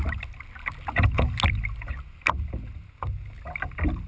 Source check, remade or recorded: recorded